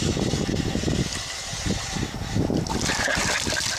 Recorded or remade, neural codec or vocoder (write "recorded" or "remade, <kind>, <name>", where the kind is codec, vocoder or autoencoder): recorded